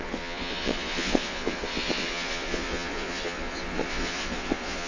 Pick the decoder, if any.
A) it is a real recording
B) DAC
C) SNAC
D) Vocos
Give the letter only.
D